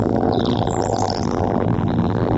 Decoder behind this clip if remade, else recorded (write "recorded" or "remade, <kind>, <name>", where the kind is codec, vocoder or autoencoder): remade, vocoder, BigVGAN v2